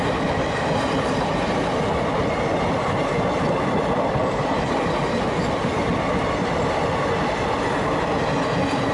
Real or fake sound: real